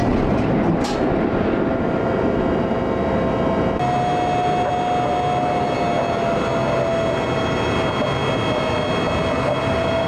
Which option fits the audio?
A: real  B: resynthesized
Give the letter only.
A